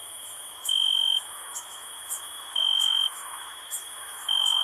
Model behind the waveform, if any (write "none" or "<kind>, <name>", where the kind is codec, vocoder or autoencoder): autoencoder, DAC-VAE